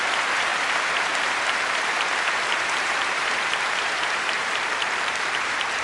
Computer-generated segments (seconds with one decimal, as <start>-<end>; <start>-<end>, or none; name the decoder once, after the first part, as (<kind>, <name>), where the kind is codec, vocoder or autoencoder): 0.0-5.8 (vocoder, BigVGAN v2)